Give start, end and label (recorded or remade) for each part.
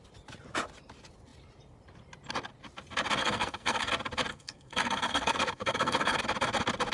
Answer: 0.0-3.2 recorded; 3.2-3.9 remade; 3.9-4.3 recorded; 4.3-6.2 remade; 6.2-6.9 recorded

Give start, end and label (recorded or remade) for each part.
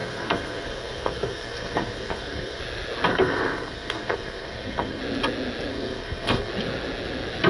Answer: 0.0-2.6 remade; 2.6-3.1 recorded; 3.1-5.0 remade; 5.0-5.7 recorded; 5.7-6.5 remade; 6.5-7.5 recorded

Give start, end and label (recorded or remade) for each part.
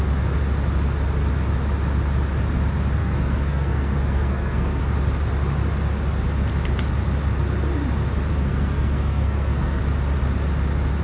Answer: 0.0-3.0 recorded; 3.0-4.8 remade; 4.8-8.3 recorded; 8.3-9.8 remade; 9.8-11.0 recorded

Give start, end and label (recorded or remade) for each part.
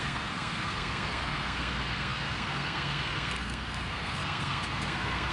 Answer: 0.0-5.3 remade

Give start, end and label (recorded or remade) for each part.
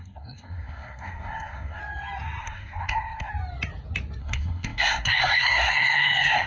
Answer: 0.0-1.8 remade; 1.8-2.4 recorded; 2.4-3.3 remade; 3.3-4.2 recorded; 4.2-6.5 remade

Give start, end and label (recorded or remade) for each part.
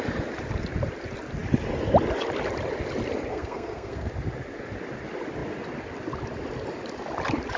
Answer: 0.0-3.3 recorded; 3.3-4.1 remade; 4.1-7.6 recorded